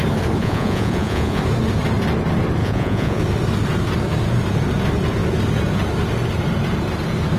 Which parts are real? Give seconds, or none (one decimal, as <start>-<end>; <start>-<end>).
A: 0.0-0.4; 1.4-2.6; 3.2-7.4